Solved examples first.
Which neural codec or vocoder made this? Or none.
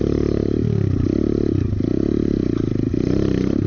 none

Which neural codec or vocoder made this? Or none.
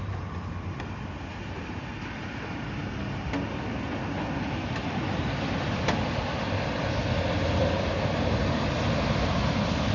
none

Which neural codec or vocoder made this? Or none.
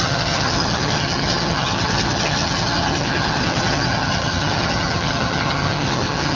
vocoder, HiFi-GAN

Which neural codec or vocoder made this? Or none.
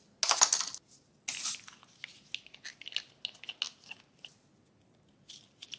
none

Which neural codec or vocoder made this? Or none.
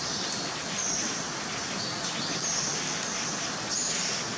none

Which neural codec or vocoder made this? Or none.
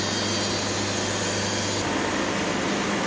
none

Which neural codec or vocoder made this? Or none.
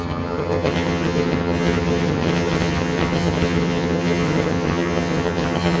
vocoder, HiFi-GAN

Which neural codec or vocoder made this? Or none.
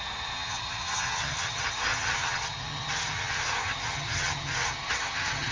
vocoder, HiFi-GAN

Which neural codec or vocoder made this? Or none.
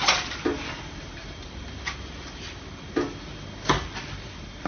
none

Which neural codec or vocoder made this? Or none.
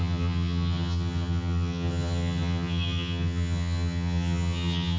vocoder, HiFi-GAN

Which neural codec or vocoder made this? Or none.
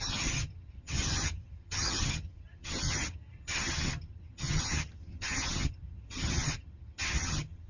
vocoder, HiFi-GAN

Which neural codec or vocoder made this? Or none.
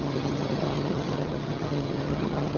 vocoder, HiFi-GAN